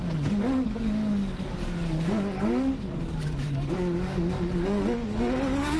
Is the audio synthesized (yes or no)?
yes